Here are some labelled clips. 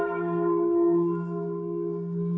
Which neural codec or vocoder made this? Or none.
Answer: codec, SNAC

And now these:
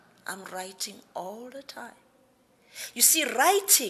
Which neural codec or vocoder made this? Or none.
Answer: none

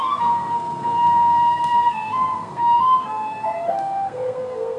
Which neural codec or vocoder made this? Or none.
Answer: codec, SNAC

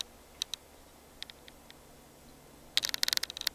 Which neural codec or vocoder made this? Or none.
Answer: none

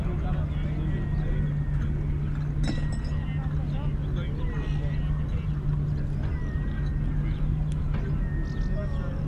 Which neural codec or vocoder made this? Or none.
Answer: none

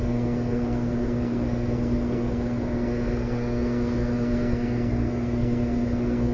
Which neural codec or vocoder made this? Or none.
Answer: codec, SNAC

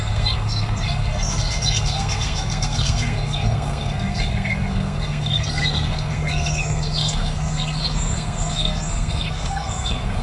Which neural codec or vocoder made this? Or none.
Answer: codec, SNAC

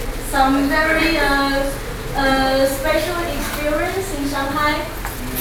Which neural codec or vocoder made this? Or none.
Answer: none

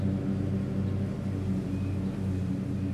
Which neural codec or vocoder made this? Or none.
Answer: none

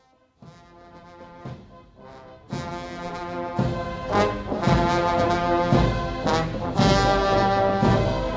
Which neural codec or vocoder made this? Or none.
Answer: none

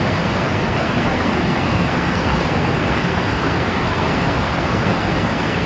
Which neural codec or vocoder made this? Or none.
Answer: codec, SNAC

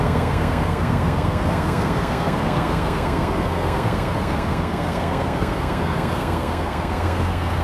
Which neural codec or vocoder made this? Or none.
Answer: codec, SNAC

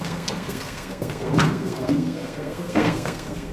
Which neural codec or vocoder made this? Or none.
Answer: codec, SNAC